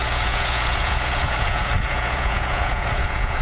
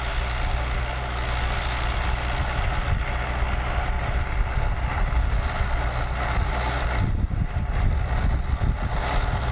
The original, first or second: second